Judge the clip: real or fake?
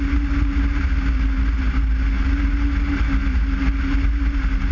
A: real